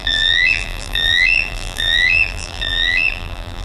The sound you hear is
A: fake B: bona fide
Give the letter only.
A